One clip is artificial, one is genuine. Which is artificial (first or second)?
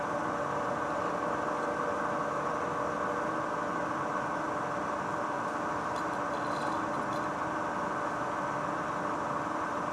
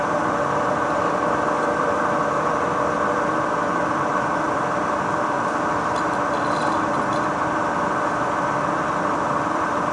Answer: second